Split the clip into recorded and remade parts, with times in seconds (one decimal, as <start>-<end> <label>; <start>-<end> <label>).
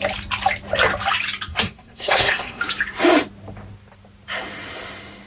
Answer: 0.0-1.5 recorded; 1.5-2.6 remade; 2.6-5.3 recorded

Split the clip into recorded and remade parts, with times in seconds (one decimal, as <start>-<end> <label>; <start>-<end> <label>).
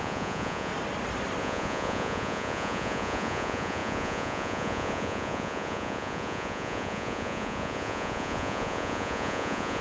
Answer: 0.0-0.7 remade; 0.7-1.4 recorded; 1.4-9.8 remade